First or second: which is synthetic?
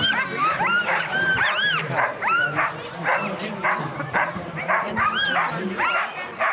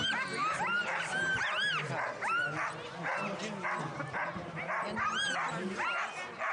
first